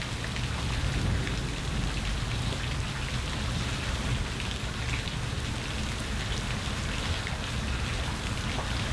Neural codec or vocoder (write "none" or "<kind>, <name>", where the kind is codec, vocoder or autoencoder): none